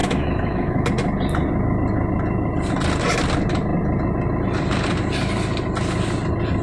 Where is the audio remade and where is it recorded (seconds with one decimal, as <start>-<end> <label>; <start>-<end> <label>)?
0.0-0.9 remade; 0.9-6.6 recorded